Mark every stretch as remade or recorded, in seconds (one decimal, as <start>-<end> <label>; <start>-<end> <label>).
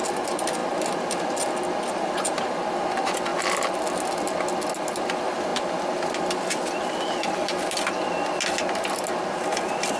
0.0-10.0 recorded